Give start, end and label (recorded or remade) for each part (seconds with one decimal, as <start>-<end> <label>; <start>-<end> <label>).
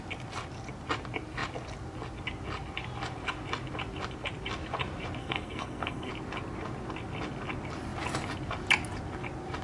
0.0-5.2 recorded; 5.2-6.1 remade; 6.1-9.6 recorded